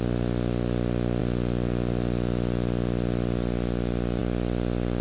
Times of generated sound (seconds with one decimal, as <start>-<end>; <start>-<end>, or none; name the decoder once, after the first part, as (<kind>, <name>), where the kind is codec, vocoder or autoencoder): none